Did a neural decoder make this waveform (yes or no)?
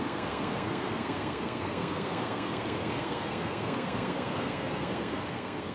yes